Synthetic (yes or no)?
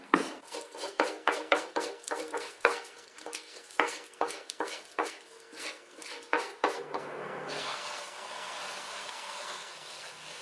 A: yes